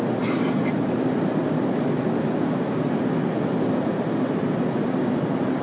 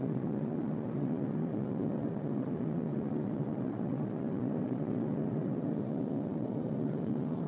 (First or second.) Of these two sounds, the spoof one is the second